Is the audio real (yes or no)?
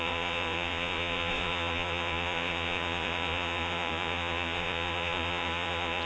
no